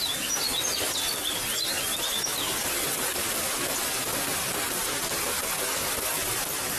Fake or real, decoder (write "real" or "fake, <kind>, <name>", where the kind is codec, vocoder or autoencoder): real